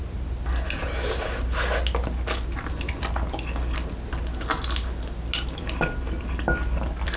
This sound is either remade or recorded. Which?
recorded